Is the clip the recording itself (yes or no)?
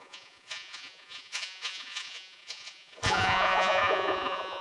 no